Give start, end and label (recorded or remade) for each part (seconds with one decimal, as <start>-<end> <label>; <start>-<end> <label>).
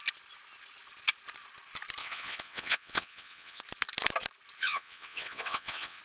0.0-2.0 recorded; 2.0-3.6 remade; 3.6-4.6 recorded; 4.6-6.0 remade